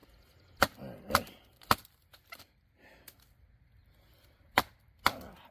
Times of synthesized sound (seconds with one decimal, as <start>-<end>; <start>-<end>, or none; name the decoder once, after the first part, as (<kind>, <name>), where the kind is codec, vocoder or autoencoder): none